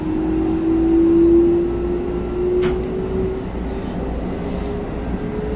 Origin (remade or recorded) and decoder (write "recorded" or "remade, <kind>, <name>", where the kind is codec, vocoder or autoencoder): recorded